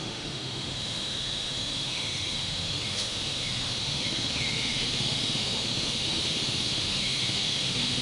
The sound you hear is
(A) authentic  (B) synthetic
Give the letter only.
B